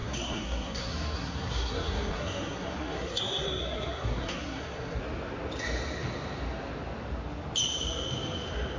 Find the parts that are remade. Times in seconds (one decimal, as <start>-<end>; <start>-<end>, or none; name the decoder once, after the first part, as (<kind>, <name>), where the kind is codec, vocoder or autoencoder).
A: 0.0-5.0 (codec, SNAC)